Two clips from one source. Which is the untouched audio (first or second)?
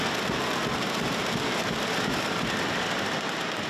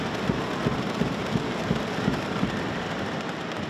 first